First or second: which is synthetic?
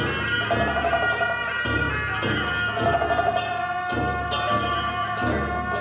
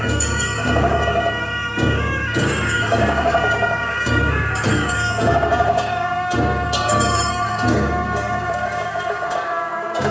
second